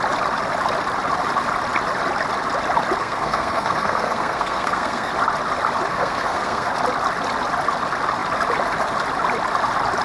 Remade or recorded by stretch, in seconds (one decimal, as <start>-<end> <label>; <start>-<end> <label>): 0.0-3.0 recorded; 3.0-5.1 remade; 5.1-5.9 recorded; 5.9-6.7 remade; 6.7-10.0 recorded